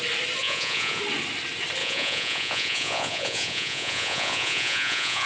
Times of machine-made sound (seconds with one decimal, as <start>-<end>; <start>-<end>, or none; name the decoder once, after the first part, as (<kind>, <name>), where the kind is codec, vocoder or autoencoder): 0.4-1.0 (vocoder, Vocos); 1.8-5.3